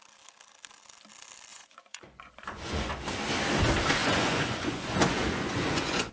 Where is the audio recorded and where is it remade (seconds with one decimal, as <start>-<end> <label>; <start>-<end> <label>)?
0.0-1.5 recorded; 1.5-2.9 remade; 2.9-4.0 recorded; 4.0-6.1 remade